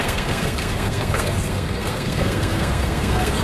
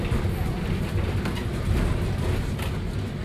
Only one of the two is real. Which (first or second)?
second